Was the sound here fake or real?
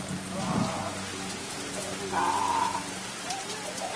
real